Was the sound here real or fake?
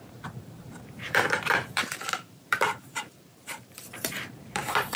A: fake